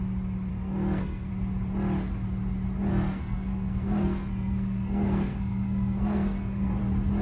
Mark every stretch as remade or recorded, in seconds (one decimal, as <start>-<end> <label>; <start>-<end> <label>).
0.0-0.5 recorded; 0.5-1.3 remade; 1.3-2.9 recorded; 2.9-6.8 remade; 6.8-7.2 recorded